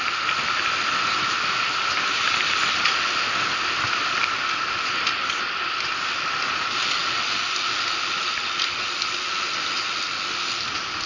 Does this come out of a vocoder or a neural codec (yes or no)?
no